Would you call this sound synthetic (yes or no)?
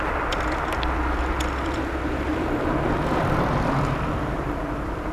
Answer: yes